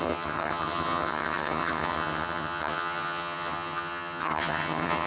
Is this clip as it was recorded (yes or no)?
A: no